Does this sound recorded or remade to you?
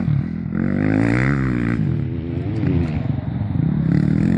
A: recorded